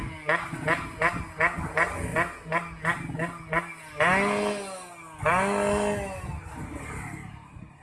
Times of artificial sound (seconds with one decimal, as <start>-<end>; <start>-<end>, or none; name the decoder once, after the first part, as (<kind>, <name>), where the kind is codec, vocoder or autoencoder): none